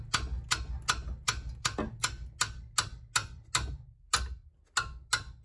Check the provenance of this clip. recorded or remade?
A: recorded